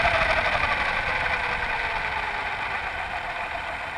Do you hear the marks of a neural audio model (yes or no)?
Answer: no